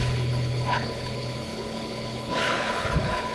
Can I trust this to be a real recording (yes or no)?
no